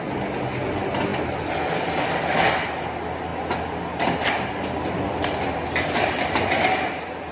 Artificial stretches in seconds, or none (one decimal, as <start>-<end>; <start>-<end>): none